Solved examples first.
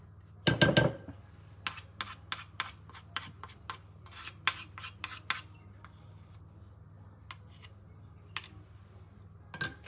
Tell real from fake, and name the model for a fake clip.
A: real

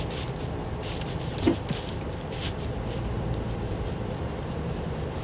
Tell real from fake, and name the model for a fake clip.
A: fake, vocoder, BigVGAN v2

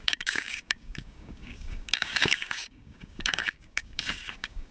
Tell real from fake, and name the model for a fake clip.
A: fake, codec, DAC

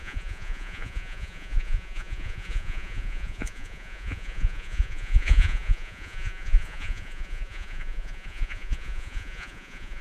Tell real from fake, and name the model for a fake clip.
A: fake, vocoder, Vocos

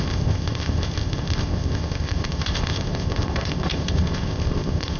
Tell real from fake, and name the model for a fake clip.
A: fake, codec, ZipCodec